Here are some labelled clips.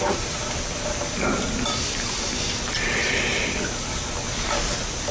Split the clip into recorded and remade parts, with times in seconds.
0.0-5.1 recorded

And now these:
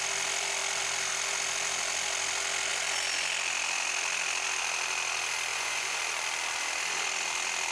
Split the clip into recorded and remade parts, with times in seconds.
0.0-5.5 recorded; 5.5-6.0 remade; 6.0-7.7 recorded